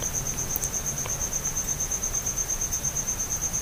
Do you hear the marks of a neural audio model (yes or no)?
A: no